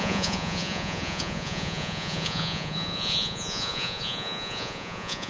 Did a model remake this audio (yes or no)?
yes